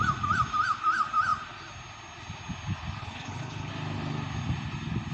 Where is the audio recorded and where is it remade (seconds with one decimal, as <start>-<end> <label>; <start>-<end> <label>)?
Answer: 0.0-3.0 recorded; 3.0-3.7 remade; 3.7-5.1 recorded